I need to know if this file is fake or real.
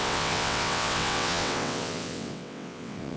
fake